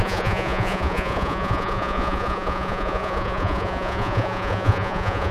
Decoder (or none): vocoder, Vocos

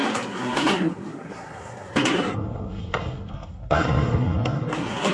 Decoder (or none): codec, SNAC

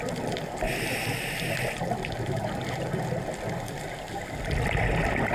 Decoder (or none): none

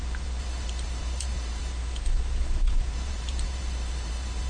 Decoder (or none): vocoder, BigVGAN v2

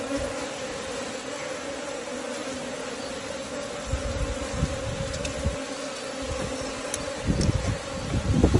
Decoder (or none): none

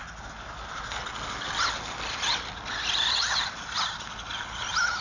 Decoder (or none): none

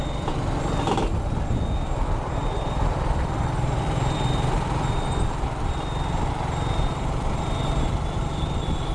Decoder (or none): vocoder, BigVGAN v2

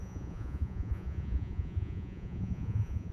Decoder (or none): vocoder, Vocos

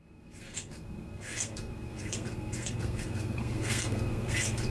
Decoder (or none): codec, SNAC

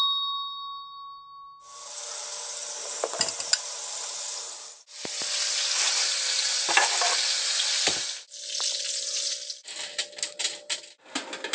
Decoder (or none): none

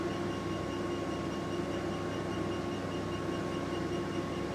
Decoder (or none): none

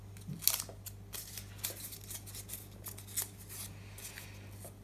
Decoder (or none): none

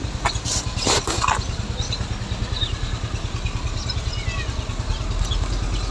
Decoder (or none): none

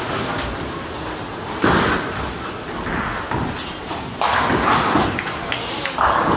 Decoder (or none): none